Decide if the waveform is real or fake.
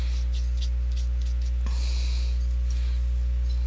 real